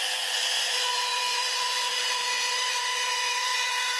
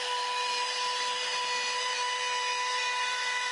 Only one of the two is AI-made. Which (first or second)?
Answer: first